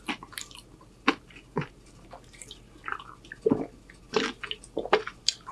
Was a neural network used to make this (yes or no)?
no